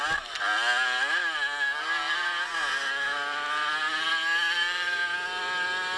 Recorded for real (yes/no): yes